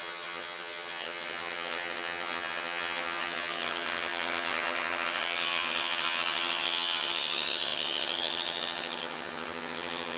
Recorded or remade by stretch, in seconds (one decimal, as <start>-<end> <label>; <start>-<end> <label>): 0.0-10.2 remade